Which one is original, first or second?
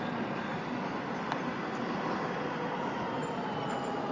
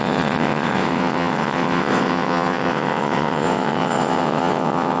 first